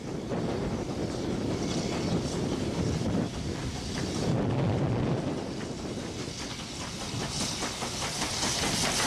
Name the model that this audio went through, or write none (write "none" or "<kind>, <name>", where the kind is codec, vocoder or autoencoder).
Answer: none